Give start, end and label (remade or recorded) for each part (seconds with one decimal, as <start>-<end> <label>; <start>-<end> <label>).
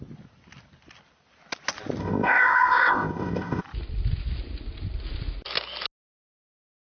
0.0-2.0 recorded; 2.0-3.6 remade; 3.6-6.9 recorded